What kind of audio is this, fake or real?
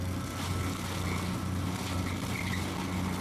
real